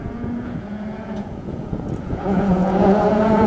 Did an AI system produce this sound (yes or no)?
yes